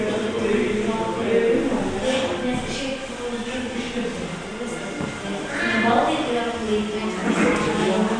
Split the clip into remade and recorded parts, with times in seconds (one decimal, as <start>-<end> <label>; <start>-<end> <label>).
0.0-8.2 recorded